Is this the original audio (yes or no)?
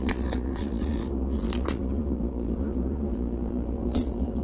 no